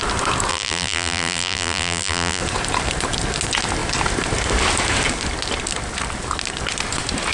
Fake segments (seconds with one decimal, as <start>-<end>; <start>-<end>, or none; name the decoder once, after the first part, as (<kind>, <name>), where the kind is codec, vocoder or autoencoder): 0.5-2.4 (vocoder, BigVGAN v2)